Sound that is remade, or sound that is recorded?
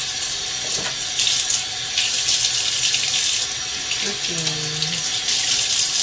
recorded